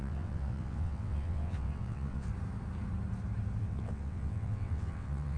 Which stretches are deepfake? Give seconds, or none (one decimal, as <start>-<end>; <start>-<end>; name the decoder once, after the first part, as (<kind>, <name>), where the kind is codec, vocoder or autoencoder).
0.0-2.3 (vocoder, WaveNeXt); 3.6-5.4